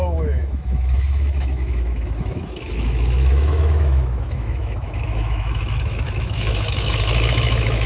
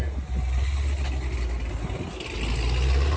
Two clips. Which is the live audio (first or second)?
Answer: second